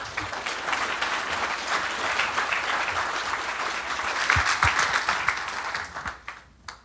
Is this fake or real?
real